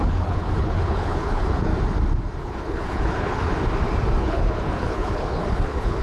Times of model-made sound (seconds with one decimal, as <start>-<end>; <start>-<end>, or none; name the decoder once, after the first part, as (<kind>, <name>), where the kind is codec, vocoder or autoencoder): 0.0-1.7 (codec, HILCodec); 2.4-3.5; 4.2-6.0